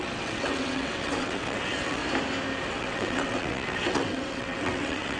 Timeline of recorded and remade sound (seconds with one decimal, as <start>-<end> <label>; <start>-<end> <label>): 0.0-2.0 remade; 2.0-2.7 recorded; 2.7-5.2 remade